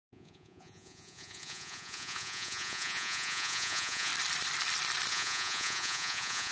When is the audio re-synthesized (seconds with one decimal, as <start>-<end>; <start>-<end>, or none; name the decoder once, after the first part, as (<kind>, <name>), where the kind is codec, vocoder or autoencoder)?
0.0-4.1 (vocoder, Vocos); 5.1-6.5